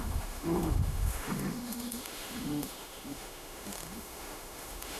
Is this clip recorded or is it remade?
remade